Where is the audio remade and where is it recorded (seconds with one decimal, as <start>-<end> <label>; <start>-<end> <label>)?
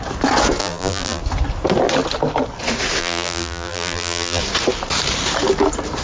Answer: 0.0-0.6 recorded; 0.6-1.2 remade; 1.2-3.0 recorded; 3.0-4.4 remade; 4.4-6.0 recorded